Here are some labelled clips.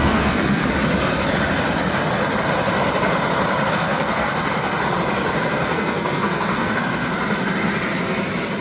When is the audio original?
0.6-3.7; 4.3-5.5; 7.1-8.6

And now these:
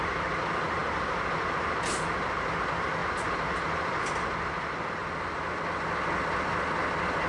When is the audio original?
0.0-7.3

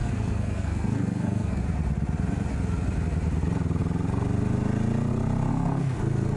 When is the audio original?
1.6-5.5

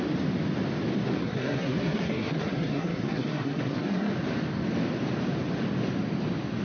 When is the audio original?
0.0-1.2; 4.1-6.6

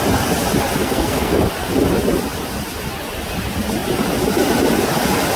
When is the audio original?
0.0-0.8; 1.4-5.4

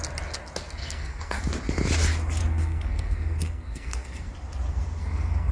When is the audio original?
0.0-0.8; 1.4-2.4; 4.3-4.7

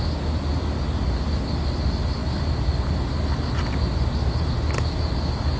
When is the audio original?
0.0-5.6

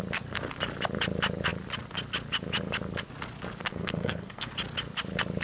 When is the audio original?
0.0-3.7; 4.5-5.4